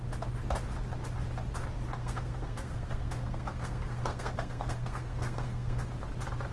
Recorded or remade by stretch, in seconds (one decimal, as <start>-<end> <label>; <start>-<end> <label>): 0.0-2.0 recorded; 2.0-5.8 remade; 5.8-6.5 recorded